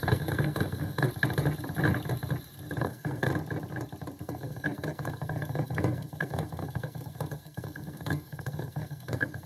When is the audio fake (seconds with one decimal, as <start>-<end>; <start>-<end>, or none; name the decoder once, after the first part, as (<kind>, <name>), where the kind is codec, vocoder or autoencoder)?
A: 0.0-1.1 (codec, SNAC); 2.8-3.3; 4.2-9.5